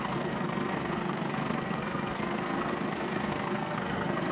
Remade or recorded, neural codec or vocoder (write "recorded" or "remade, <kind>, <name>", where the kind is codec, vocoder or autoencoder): remade, codec, SNAC